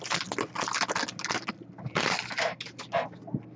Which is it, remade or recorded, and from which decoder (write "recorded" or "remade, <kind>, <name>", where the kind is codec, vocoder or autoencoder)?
recorded